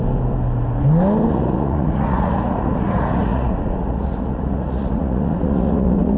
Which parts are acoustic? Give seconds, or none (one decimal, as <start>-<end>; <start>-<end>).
0.0-1.3